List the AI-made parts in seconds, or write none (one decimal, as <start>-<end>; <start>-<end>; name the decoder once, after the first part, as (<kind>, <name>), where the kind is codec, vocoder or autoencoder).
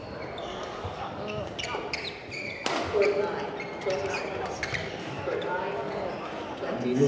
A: 0.5-1.4 (codec, DAC); 4.8-6.1